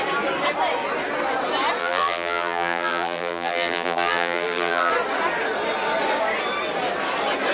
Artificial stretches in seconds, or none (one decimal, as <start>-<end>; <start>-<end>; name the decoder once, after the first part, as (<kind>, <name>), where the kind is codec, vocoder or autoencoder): 1.8-4.9 (vocoder, BigVGAN v2)